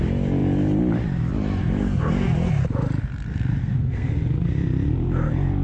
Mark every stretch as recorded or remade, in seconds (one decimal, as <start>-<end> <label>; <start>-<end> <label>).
0.0-3.6 recorded; 3.6-4.1 remade; 4.1-5.6 recorded